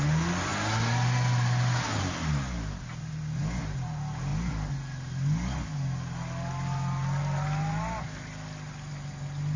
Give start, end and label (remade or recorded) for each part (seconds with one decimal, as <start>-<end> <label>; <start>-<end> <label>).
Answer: 0.0-9.6 recorded